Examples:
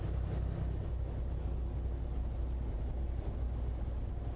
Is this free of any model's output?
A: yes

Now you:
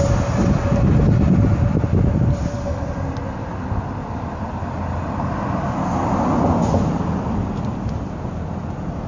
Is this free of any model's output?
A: yes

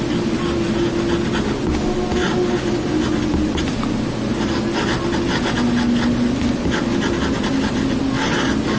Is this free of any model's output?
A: yes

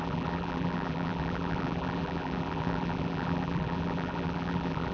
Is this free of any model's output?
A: no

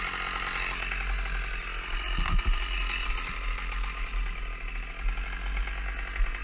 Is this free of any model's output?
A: yes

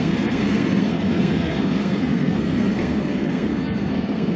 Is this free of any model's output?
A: no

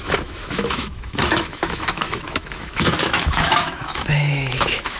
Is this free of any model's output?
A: no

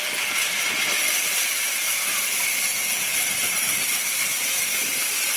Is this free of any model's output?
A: yes